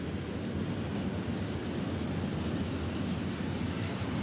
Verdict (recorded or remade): recorded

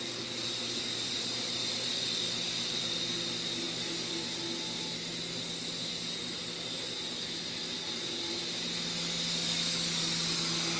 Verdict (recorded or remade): recorded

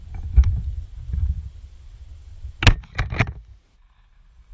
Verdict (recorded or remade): recorded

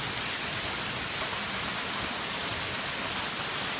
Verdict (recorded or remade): recorded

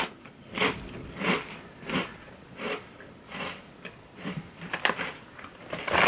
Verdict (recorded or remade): remade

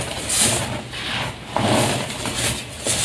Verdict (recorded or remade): recorded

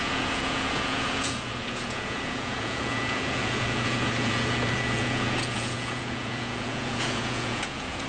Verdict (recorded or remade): remade